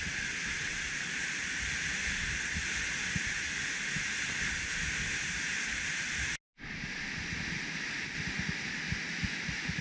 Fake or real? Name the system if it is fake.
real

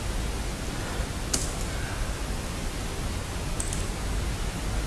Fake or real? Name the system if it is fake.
real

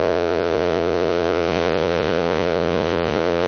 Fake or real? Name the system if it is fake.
fake, vocoder, Vocos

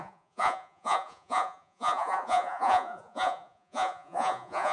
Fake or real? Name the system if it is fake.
fake, vocoder, Vocos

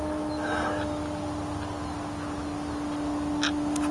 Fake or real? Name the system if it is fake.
real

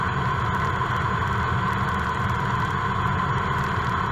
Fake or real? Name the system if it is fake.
real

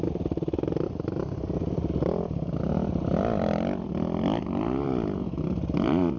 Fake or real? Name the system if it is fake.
real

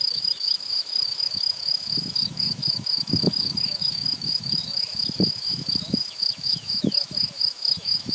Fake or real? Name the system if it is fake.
fake, autoencoder, DAC-VAE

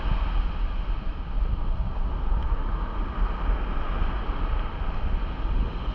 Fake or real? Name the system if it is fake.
real